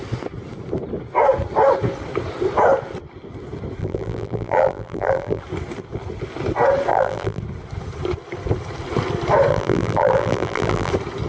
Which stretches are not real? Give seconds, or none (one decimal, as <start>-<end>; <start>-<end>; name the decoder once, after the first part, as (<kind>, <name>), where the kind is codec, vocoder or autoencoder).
3.8-5.4 (vocoder, BigVGAN v2); 6.9-7.4; 9.5-10.9